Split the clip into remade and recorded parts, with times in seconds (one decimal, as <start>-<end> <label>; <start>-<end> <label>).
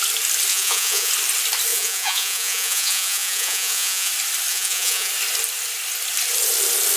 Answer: 0.0-0.5 recorded; 0.5-1.1 remade; 1.1-1.7 recorded; 1.7-4.1 remade; 4.1-4.5 recorded; 4.5-5.1 remade; 5.1-7.0 recorded